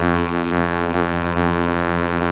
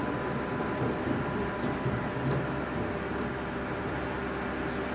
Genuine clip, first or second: second